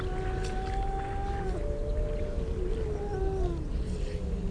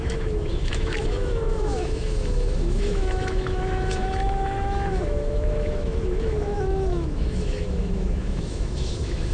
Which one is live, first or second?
first